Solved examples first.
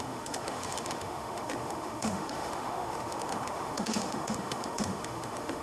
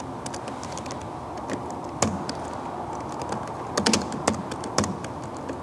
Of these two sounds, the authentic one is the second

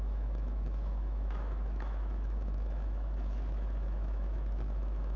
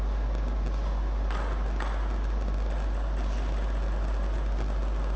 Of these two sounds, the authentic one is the second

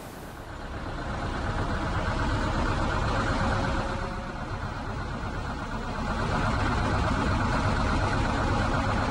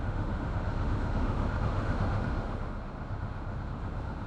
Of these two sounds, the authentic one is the first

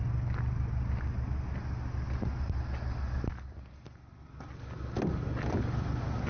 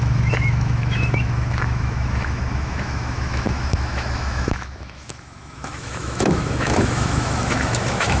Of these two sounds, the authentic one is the first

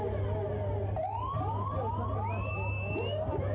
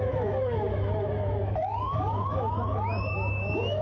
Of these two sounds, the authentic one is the first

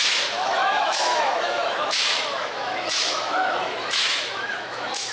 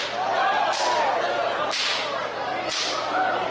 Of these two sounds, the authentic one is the second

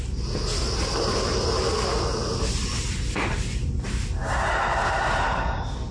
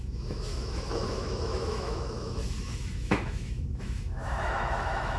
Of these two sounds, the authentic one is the first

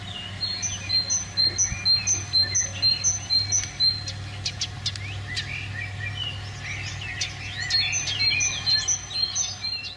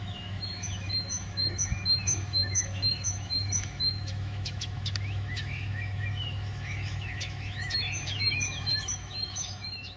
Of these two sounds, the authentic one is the first